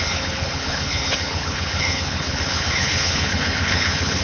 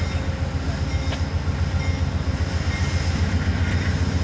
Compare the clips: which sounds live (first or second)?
second